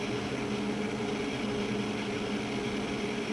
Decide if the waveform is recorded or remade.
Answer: recorded